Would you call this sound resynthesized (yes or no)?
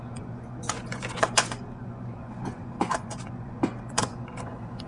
yes